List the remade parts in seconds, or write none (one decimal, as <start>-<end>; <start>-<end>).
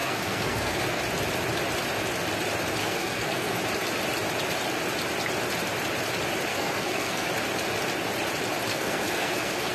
0.0-1.0; 2.8-3.6; 6.5-7.3; 8.7-9.7